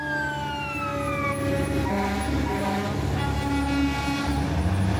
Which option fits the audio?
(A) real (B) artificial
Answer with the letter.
A